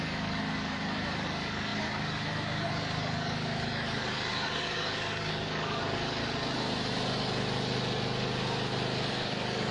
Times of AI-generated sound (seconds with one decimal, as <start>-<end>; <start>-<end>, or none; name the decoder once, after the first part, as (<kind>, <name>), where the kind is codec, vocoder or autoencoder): 0.0-6.2 (codec, DAC); 9.1-9.7